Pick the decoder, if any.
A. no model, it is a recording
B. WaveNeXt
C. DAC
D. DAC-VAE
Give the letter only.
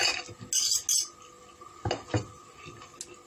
A